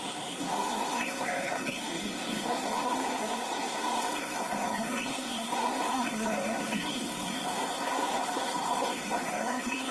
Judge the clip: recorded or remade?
remade